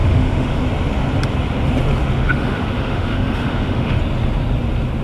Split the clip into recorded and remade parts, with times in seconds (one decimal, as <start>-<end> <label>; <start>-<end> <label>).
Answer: 0.0-0.6 remade; 0.6-2.0 recorded; 2.0-4.0 remade; 4.0-5.0 recorded